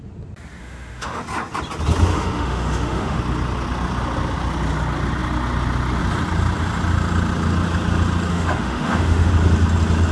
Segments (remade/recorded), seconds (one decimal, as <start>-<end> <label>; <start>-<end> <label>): 0.0-0.6 recorded; 0.6-1.2 remade; 1.2-2.1 recorded; 2.1-3.2 remade; 3.2-8.3 recorded; 8.3-9.3 remade; 9.3-10.1 recorded